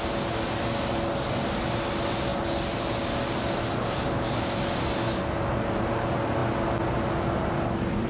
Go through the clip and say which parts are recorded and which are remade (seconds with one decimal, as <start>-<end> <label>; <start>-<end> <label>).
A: 0.0-8.1 recorded